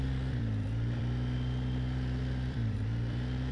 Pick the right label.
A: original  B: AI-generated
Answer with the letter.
B